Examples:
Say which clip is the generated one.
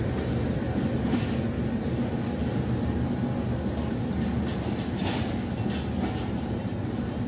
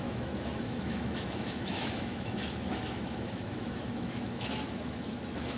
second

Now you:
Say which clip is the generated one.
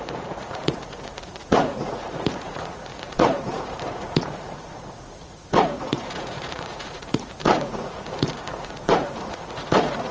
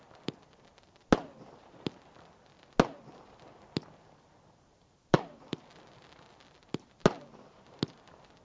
first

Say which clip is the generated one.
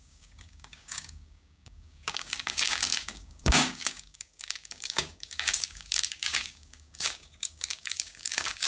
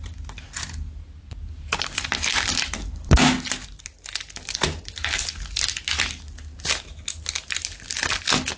first